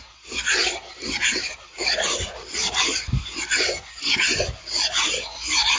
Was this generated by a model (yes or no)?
no